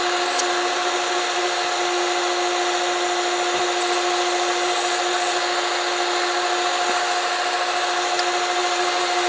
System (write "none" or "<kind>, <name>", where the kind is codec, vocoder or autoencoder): none